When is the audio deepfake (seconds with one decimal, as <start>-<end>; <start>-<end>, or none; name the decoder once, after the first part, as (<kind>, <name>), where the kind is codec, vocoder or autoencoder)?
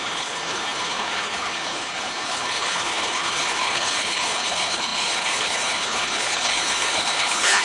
0.0-7.6 (codec, HILCodec)